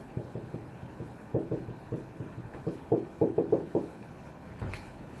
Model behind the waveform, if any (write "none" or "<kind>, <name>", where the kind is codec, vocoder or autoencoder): codec, HILCodec